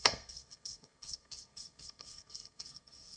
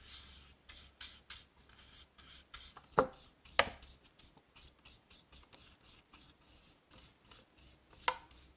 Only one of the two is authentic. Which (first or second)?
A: second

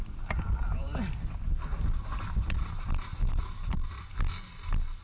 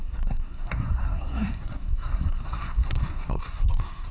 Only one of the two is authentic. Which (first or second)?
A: first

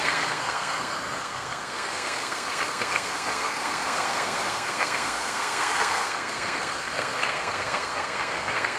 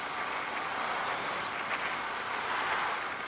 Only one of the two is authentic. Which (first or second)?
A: second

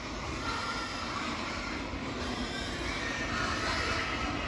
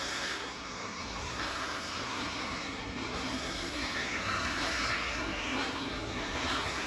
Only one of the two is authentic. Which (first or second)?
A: first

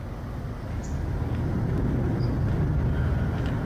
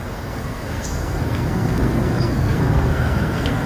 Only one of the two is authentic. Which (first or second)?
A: first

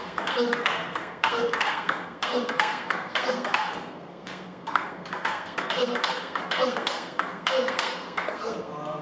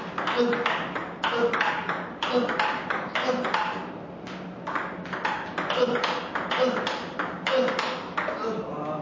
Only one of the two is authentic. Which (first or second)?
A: second